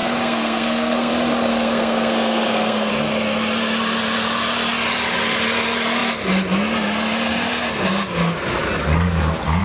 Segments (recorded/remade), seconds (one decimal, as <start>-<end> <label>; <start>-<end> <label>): 0.0-1.1 remade; 1.1-1.5 recorded; 1.5-2.9 remade; 2.9-9.6 recorded